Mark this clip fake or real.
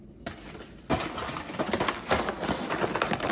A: real